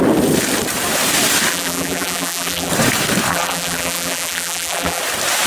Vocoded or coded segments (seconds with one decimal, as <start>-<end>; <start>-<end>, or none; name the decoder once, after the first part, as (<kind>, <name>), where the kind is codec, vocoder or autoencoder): 1.5-2.7 (vocoder, BigVGAN v2); 3.3-5.0